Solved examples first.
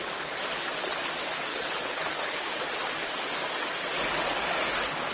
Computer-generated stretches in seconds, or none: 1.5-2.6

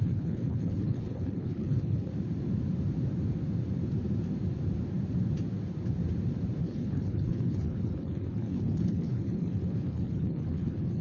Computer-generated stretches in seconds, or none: 0.0-2.1; 6.6-11.0

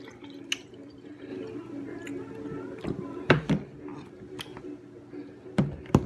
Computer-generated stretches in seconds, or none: none

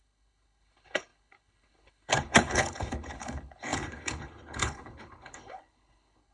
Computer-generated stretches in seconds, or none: 0.0-6.3

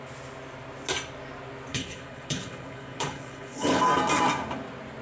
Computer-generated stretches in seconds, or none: 1.7-3.8

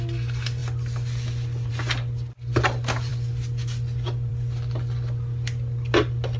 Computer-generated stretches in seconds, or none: none

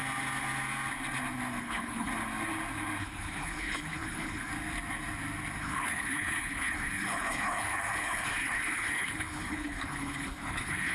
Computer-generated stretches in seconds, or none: 1.6-2.1; 3.0-4.5; 5.6-10.9

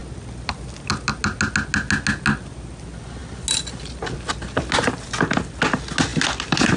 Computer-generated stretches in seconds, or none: none